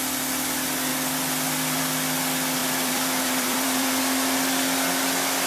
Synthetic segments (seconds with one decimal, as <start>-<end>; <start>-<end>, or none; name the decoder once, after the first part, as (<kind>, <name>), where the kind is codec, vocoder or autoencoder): 0.9-1.8 (vocoder, BigVGAN v2); 2.6-4.0